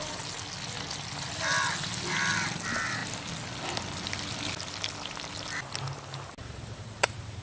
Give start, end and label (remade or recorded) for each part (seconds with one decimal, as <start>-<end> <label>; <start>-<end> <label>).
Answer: 0.0-7.4 recorded